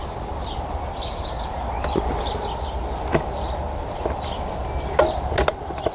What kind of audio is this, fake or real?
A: real